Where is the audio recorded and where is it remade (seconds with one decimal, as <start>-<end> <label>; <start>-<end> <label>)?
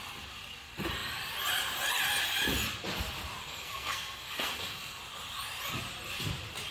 0.0-3.4 recorded; 3.4-5.0 remade; 5.0-6.7 recorded